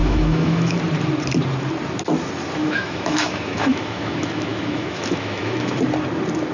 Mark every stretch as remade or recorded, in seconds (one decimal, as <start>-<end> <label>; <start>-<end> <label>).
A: 0.0-0.8 remade; 0.8-2.6 recorded; 2.6-5.8 remade; 5.8-6.5 recorded